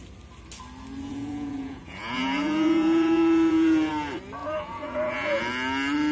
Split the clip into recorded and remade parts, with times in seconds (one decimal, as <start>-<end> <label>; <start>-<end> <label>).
0.0-1.1 recorded; 1.1-3.9 remade; 3.9-4.4 recorded; 4.4-5.4 remade; 5.4-6.1 recorded